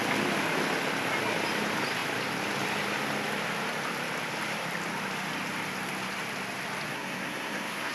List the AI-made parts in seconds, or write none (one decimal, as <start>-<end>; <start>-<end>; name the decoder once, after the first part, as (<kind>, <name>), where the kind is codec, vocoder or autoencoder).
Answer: 6.9-7.9 (codec, SNAC)